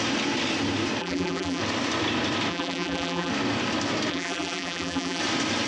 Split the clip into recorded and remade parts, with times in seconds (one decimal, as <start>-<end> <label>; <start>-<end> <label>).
0.0-1.0 recorded; 1.0-1.6 remade; 1.6-2.5 recorded; 2.5-3.3 remade; 3.3-4.1 recorded; 4.1-5.2 remade; 5.2-5.7 recorded